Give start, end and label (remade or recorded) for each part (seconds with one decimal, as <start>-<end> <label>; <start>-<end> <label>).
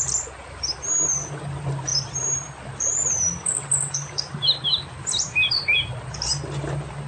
0.0-7.1 recorded